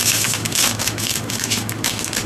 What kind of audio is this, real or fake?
fake